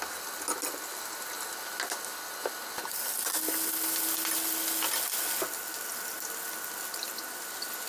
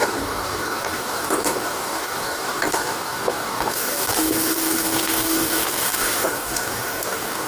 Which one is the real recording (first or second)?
first